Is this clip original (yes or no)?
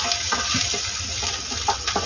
yes